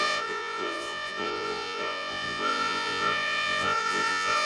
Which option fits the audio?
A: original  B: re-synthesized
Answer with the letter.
B